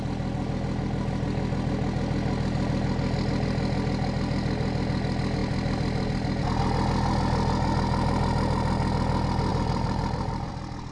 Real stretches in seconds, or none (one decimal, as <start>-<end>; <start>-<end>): 0.0-9.5; 10.5-10.9